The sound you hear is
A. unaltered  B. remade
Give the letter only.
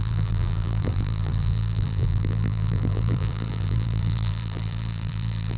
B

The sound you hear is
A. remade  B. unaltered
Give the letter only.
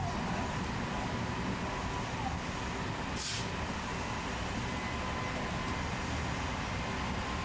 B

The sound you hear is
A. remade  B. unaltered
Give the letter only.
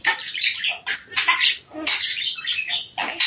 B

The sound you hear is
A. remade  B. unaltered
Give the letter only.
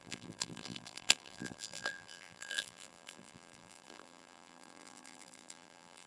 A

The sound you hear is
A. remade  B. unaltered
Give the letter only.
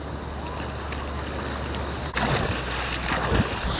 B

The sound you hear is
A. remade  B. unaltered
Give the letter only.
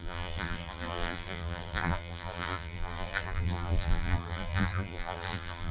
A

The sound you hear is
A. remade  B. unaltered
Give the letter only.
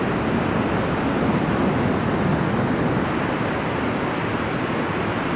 B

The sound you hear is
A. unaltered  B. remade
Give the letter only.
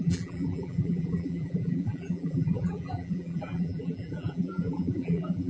B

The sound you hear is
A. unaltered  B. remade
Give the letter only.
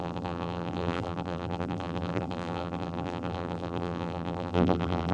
B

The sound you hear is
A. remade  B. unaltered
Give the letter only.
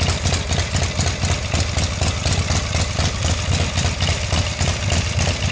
B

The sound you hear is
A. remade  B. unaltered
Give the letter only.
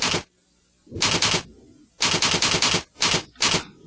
B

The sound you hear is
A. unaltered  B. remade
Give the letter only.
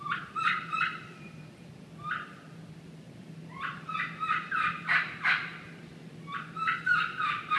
B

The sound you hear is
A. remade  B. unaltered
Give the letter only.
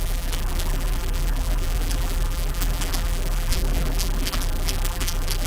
A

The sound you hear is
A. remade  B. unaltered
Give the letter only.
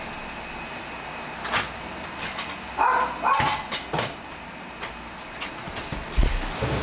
B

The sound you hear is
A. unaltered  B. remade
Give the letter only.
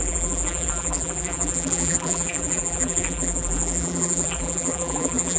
B